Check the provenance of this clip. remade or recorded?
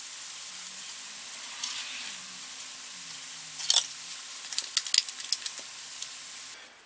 recorded